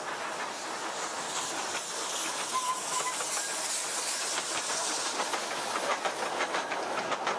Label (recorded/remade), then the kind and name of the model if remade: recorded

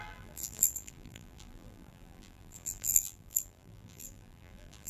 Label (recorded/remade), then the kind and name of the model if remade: remade, vocoder, BigVGAN v2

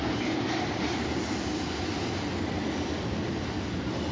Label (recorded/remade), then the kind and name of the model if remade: recorded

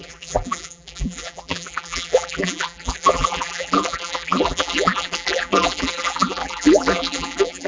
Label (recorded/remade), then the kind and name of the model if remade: remade, vocoder, BigVGAN v2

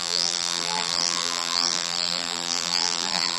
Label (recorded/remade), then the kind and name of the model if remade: remade, vocoder, BigVGAN v2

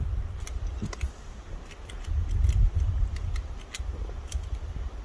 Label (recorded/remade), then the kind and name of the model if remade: remade, vocoder, BigVGAN v2